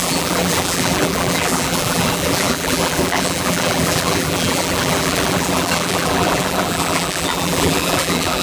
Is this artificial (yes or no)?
yes